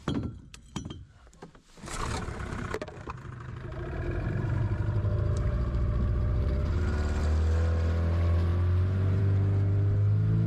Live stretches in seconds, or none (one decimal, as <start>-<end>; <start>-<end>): 0.0-0.5; 1.1-3.7; 6.8-10.5